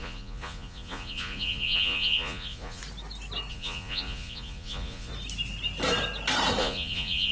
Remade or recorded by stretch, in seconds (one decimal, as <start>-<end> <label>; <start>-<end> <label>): 0.0-2.8 remade; 2.8-3.5 recorded; 3.5-5.1 remade; 5.1-6.6 recorded; 6.6-7.3 remade